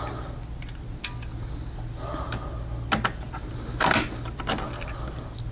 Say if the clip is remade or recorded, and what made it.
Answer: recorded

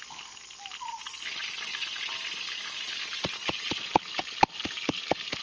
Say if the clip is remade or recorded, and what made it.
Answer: recorded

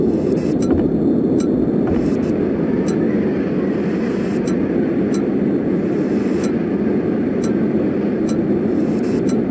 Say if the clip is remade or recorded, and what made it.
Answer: recorded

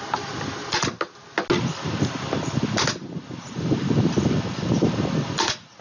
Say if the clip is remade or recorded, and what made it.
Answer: recorded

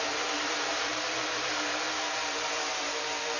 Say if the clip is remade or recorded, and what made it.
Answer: remade, vocoder, BigVGAN v2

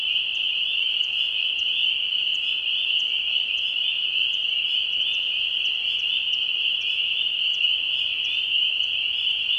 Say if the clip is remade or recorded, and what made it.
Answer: remade, vocoder, BigVGAN v2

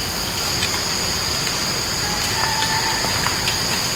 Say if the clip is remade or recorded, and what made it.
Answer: recorded